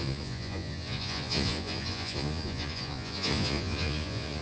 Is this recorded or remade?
remade